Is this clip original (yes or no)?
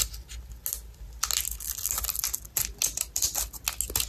yes